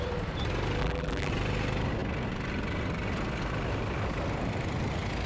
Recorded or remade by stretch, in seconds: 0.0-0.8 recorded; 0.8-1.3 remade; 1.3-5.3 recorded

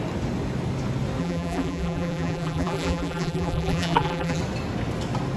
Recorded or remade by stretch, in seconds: 0.0-1.2 recorded; 1.2-4.4 remade; 4.4-5.4 recorded

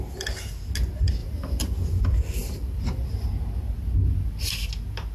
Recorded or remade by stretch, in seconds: 0.0-1.2 recorded; 1.2-2.0 remade; 2.0-2.4 recorded; 2.4-3.0 remade; 3.0-5.1 recorded

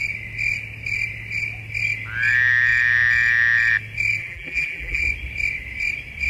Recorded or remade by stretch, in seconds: 0.0-4.2 recorded; 4.2-5.0 remade; 5.0-6.3 recorded

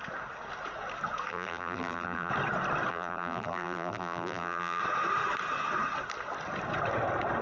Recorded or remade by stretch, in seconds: 0.0-1.3 recorded; 1.3-2.3 remade; 2.3-2.9 recorded; 2.9-4.8 remade; 4.8-7.4 recorded

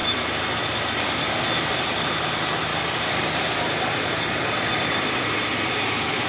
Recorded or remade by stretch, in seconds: 0.0-2.7 recorded; 2.7-5.2 remade; 5.2-6.3 recorded